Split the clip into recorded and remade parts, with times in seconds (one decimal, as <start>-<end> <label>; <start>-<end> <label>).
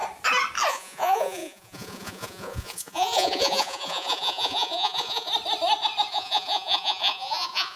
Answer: 0.0-0.7 recorded; 0.7-5.3 remade; 5.3-6.1 recorded; 6.1-7.8 remade